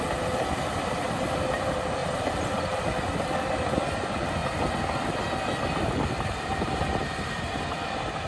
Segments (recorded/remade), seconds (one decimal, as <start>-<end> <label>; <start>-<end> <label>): 0.0-4.4 remade; 4.4-6.0 recorded; 6.0-6.9 remade; 6.9-8.3 recorded